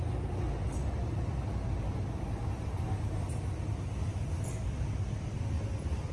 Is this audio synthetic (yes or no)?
no